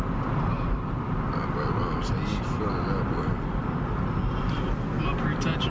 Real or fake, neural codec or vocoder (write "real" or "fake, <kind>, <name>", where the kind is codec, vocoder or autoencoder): real